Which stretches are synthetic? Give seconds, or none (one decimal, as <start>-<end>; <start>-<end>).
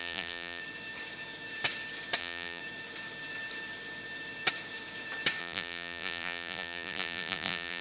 0.0-0.6; 2.2-2.6; 5.4-7.8